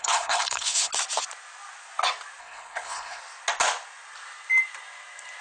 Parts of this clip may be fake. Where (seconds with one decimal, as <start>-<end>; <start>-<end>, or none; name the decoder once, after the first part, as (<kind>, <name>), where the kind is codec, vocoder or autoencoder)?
0.0-0.9 (codec, HILCodec); 2.4-3.2